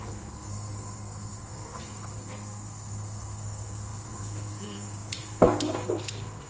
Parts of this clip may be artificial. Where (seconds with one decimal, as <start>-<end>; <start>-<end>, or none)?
0.0-6.5